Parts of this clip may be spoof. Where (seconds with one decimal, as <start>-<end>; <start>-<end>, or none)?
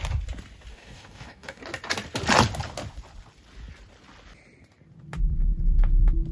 0.7-1.6